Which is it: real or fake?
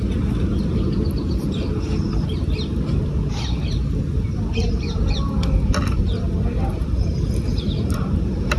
real